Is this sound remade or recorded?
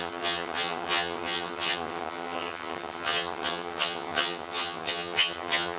remade